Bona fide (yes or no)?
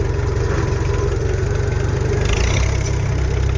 yes